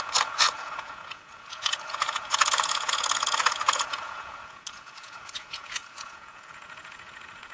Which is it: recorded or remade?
remade